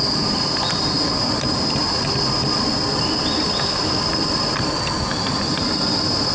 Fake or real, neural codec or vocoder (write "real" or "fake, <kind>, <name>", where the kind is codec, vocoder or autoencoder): real